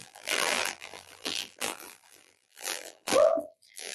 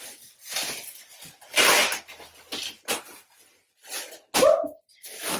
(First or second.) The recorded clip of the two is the second